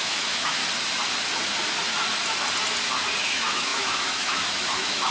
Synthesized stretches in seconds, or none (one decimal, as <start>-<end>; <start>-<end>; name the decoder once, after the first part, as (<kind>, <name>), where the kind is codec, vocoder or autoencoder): 0.0-0.6 (autoencoder, DAC-VAE); 3.2-5.1